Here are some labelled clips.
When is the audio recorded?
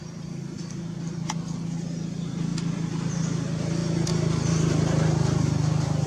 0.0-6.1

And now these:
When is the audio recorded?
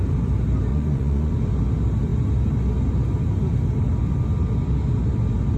0.0-0.7; 1.3-5.6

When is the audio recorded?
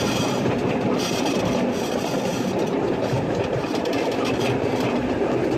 0.0-5.6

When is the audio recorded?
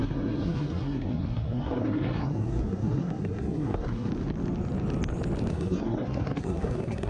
4.1-5.5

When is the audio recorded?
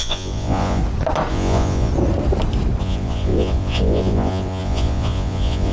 0.8-1.3; 1.9-2.8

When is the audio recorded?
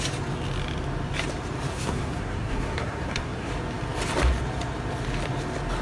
0.0-1.7; 3.5-5.8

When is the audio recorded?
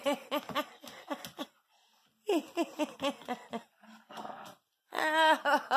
0.0-5.8